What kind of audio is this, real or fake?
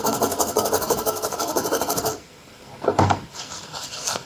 fake